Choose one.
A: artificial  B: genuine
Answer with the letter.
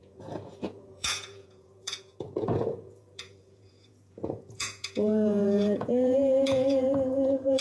A